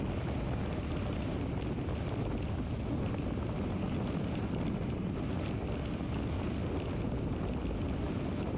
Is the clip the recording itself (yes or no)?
yes